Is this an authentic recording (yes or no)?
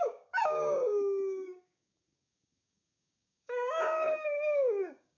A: no